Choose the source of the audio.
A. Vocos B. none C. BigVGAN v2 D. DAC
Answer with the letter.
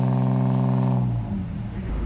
B